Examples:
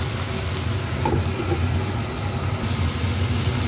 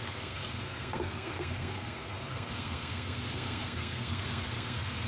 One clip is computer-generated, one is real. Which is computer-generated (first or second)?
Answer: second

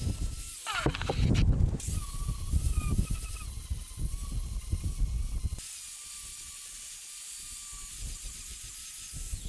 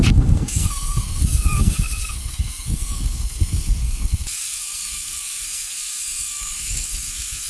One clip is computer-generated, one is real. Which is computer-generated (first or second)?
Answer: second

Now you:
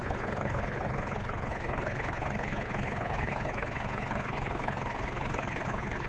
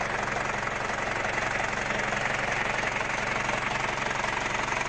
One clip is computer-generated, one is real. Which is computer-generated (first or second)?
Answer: first